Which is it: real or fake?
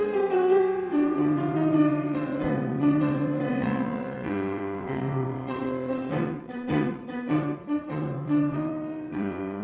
fake